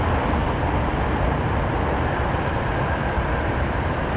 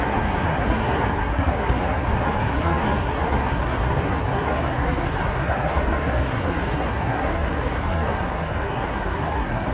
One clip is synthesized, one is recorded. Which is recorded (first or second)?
first